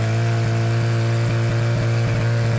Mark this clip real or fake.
real